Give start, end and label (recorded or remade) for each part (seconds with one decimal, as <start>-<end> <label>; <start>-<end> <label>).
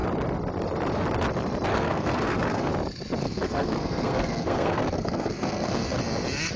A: 0.0-1.7 recorded; 1.7-2.7 remade; 2.7-3.2 recorded; 3.2-6.0 remade; 6.0-6.6 recorded